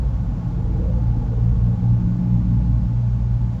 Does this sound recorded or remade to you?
recorded